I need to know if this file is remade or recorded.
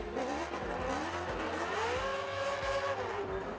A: recorded